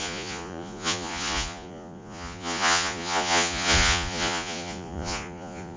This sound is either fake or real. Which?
fake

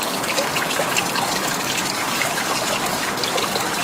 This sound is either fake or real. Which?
fake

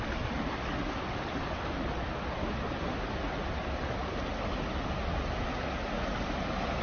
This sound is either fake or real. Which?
real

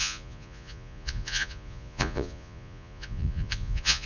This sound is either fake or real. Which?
fake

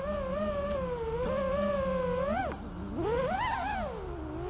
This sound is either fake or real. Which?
real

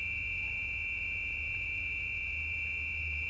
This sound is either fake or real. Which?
real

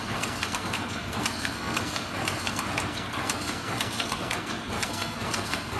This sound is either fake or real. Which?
fake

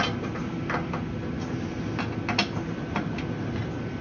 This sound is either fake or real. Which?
real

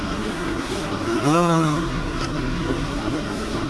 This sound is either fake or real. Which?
fake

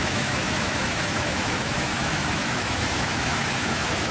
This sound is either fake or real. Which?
fake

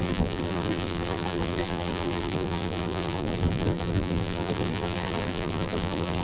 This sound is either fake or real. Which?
fake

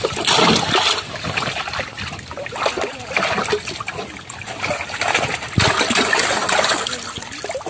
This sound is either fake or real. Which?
real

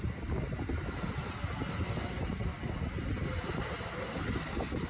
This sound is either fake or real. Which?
real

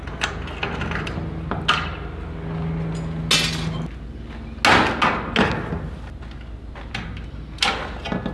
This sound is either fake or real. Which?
real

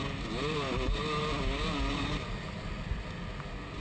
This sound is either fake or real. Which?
real